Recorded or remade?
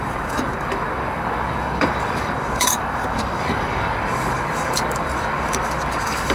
remade